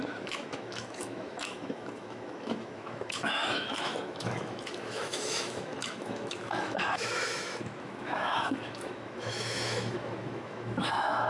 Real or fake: fake